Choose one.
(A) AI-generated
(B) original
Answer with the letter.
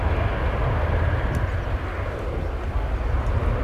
B